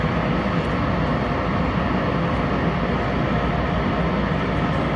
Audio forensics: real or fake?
real